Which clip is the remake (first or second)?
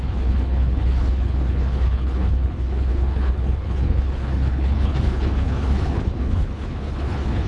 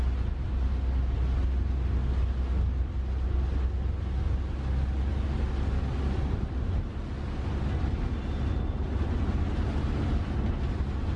first